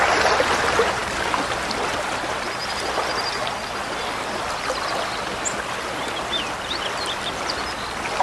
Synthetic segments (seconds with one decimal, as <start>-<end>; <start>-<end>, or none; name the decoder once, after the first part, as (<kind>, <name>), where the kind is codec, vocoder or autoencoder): none